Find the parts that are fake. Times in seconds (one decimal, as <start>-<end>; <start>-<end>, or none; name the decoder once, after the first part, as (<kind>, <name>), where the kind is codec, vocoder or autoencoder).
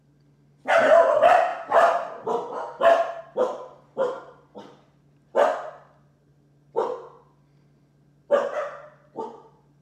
none